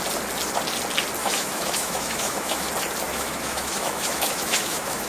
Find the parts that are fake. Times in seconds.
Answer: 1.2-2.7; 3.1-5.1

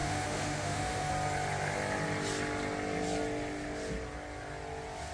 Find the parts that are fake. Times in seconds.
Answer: 0.0-1.1

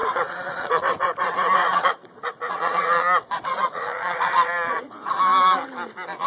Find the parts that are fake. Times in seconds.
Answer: 0.0-0.8; 1.6-5.1

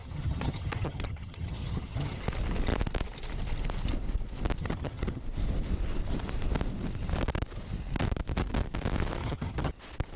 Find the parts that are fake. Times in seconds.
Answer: 0.0-2.2; 4.6-5.2; 9.2-9.7

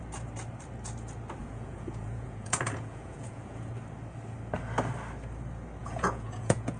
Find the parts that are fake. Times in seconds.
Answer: 1.4-3.7; 5.8-6.8

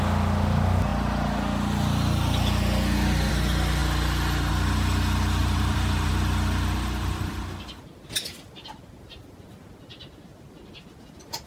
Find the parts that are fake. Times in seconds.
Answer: 5.4-6.1

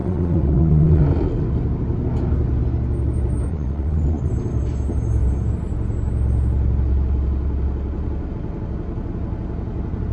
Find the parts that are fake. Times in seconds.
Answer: 0.0-1.0; 3.5-4.3

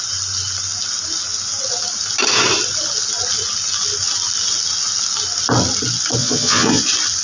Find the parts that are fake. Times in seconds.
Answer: 6.2-6.8